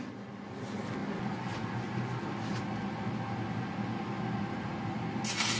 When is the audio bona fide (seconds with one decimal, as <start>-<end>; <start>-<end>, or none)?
0.0-5.6